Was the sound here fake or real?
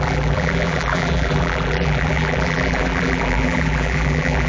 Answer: fake